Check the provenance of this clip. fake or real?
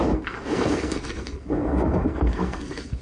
fake